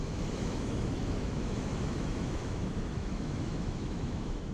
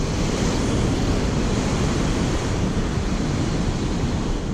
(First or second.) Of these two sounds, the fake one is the first